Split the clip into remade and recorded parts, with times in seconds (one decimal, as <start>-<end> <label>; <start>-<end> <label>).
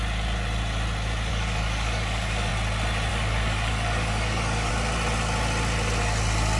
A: 0.0-1.3 recorded; 1.3-2.5 remade; 2.5-3.1 recorded; 3.1-4.7 remade; 4.7-6.6 recorded